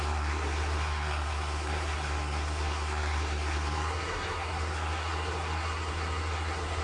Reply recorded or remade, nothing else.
remade